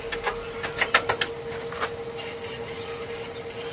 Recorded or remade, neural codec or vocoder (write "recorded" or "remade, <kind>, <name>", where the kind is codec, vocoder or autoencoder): recorded